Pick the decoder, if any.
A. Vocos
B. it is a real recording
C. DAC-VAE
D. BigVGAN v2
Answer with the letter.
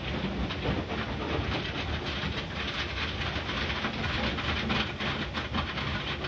B